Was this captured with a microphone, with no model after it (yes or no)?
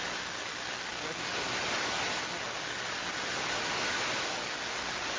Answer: yes